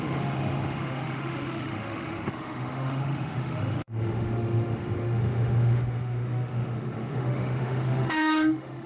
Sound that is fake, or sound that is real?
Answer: fake